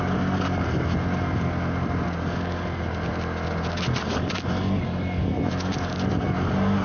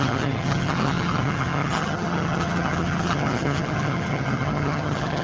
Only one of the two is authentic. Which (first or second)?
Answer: first